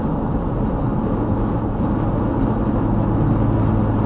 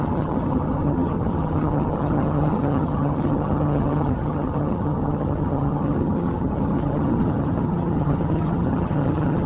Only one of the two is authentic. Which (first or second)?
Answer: first